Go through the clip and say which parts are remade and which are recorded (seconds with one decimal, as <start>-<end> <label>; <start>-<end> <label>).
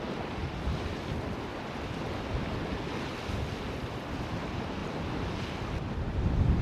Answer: 0.0-0.4 recorded; 0.4-1.0 remade; 1.0-4.8 recorded; 4.8-6.6 remade